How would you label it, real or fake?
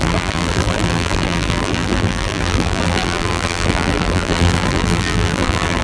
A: fake